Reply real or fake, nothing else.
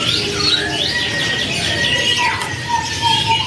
real